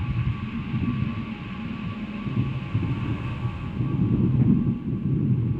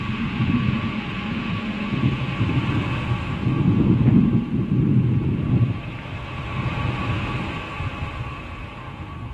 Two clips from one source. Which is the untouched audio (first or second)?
first